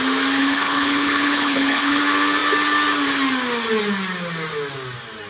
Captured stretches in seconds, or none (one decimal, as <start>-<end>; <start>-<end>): 0.0-0.4; 2.0-5.3